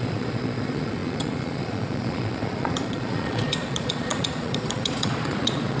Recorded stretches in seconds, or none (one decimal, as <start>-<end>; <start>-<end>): none